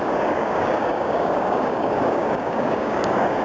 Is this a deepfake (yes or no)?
yes